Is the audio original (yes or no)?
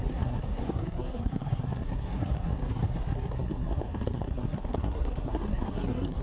no